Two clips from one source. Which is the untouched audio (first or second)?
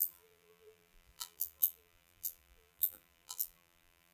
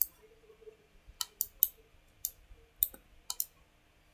second